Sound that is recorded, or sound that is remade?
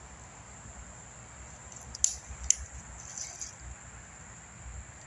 recorded